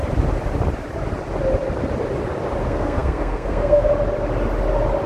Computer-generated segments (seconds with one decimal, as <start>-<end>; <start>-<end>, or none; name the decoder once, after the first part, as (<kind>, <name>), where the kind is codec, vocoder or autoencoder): 2.6-3.9 (codec, SNAC)